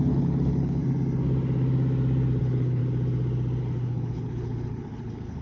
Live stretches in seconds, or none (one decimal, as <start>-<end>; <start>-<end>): 0.8-2.4; 2.8-3.6